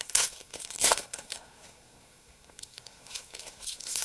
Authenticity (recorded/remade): remade